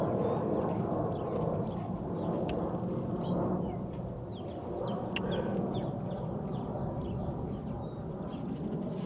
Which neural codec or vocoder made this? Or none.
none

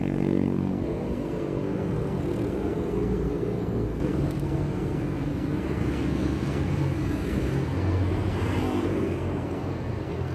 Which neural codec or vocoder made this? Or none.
codec, SNAC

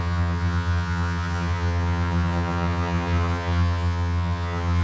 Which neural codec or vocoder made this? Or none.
vocoder, HiFi-GAN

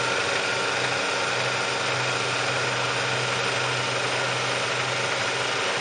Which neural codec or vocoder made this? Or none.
none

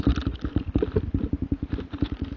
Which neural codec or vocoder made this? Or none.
none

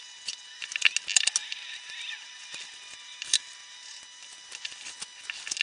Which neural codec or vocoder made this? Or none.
none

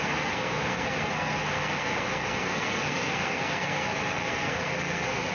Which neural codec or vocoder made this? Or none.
codec, SNAC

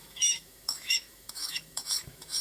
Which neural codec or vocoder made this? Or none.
autoencoder, DAC-VAE